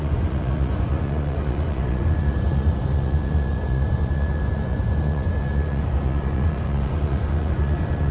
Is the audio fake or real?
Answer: fake